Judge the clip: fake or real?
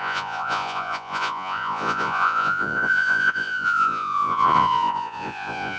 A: fake